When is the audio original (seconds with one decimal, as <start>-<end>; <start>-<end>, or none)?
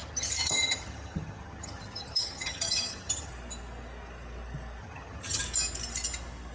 3.3-4.8; 5.4-6.5